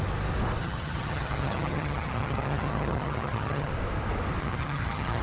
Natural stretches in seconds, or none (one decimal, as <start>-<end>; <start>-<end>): 0.0-0.6; 3.7-4.4